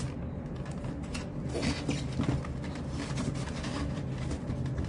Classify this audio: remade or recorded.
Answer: recorded